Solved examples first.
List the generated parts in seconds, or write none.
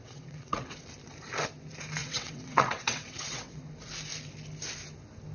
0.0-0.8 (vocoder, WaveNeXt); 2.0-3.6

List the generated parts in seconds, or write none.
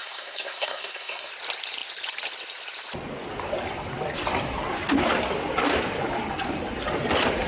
0.0-1.3 (codec, SNAC)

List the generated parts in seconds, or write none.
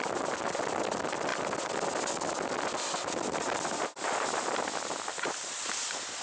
none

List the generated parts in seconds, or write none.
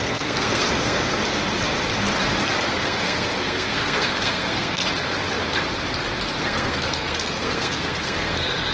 0.0-1.2 (codec, SNAC); 2.6-4.8; 6.4-8.7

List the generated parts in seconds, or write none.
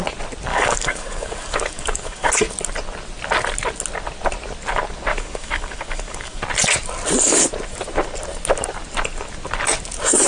0.5-2.3 (codec, DAC); 5.1-6.4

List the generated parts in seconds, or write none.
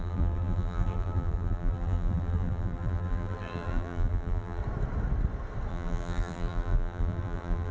0.0-4.6 (vocoder, BigVGAN v2); 5.7-7.7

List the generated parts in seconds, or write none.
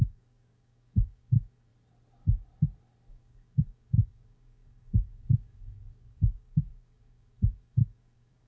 0.0-1.7 (codec, DAC); 3.1-8.5